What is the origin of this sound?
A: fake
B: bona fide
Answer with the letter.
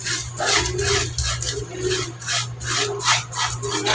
B